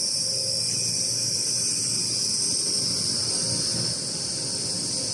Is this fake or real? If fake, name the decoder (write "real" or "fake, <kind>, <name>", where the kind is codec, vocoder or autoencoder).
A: real